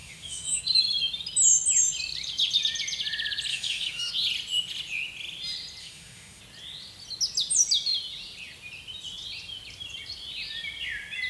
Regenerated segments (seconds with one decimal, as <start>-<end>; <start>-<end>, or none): 0.0-0.6; 3.5-4.1; 5.8-6.4